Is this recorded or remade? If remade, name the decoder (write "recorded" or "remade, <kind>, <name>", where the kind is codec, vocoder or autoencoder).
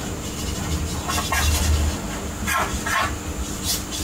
recorded